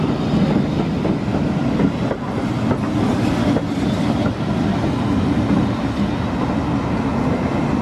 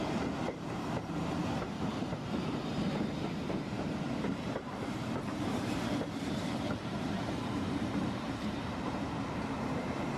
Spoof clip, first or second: second